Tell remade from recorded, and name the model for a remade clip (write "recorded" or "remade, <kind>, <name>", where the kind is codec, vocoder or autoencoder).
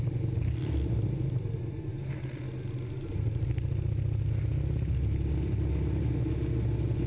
recorded